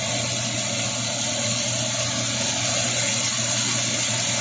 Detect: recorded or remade recorded